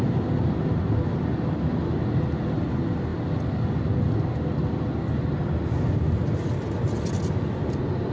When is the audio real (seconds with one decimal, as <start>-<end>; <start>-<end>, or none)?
0.0-8.1